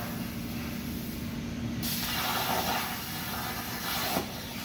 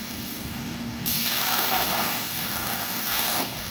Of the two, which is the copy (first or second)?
second